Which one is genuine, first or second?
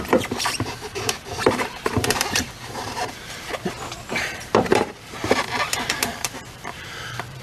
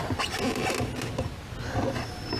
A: second